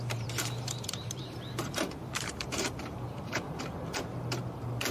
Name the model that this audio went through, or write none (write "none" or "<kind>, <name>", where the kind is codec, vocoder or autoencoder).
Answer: vocoder, BigVGAN v2